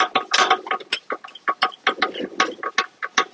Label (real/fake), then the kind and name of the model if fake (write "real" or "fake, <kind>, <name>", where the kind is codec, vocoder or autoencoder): real